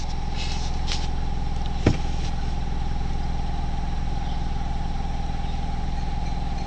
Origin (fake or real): real